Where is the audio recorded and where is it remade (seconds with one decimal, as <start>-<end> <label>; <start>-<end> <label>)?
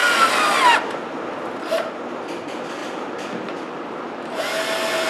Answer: 0.0-0.6 remade; 0.6-2.8 recorded; 2.8-4.4 remade; 4.4-5.1 recorded